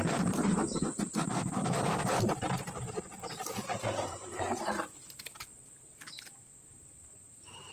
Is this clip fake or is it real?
real